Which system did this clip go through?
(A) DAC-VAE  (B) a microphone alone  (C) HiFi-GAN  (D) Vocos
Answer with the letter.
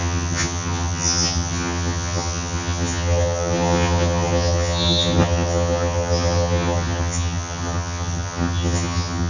C